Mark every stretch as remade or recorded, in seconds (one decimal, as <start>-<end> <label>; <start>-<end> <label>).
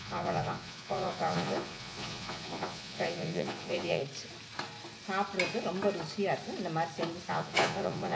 0.0-4.0 remade; 4.0-7.3 recorded; 7.3-8.2 remade